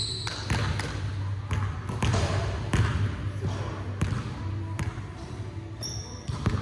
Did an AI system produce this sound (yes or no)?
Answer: no